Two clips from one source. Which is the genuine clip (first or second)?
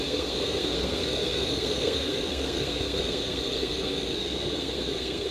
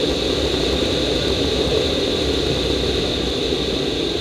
second